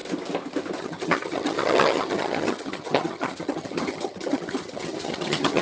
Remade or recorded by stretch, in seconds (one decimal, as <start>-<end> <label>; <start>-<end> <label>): 0.0-0.8 recorded; 0.8-5.6 remade